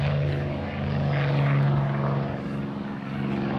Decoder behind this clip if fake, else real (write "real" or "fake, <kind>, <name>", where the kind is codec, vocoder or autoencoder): fake, codec, DAC